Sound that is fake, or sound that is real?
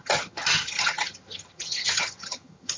fake